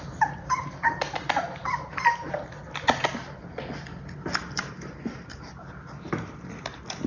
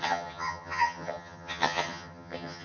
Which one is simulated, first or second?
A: second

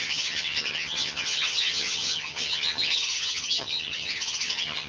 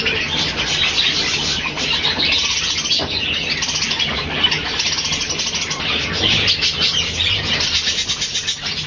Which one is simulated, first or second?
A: first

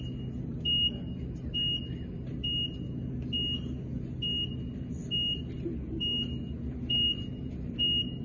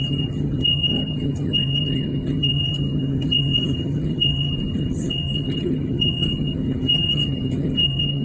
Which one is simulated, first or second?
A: second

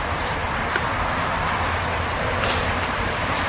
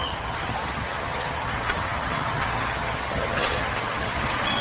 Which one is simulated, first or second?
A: second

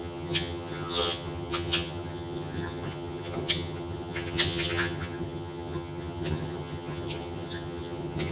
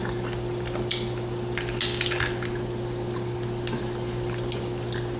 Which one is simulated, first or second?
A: first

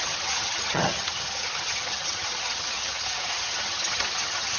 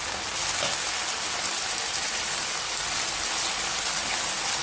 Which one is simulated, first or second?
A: first